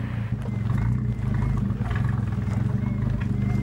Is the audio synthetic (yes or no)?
no